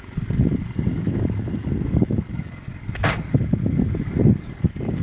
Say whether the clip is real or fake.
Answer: fake